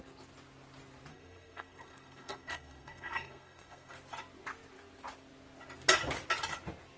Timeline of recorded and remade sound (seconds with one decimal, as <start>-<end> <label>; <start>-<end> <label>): 0.0-1.1 recorded; 1.1-3.9 remade; 3.9-7.0 recorded